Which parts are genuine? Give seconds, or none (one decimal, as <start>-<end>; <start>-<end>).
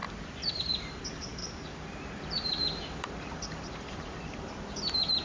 0.6-1.4; 4.4-5.2